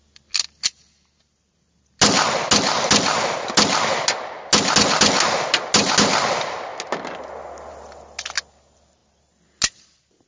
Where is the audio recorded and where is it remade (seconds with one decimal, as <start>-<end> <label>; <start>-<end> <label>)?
0.0-10.3 recorded